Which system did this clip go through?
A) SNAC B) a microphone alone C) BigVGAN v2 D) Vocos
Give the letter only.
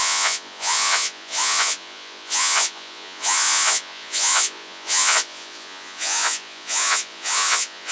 D